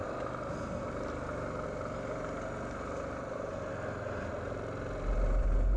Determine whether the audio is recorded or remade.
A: recorded